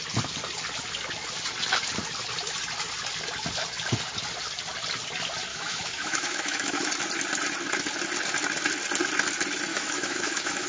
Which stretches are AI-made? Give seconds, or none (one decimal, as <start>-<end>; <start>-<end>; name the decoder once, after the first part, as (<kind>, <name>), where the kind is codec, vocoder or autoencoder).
5.5-6.9 (autoencoder, DAC-VAE); 9.7-10.7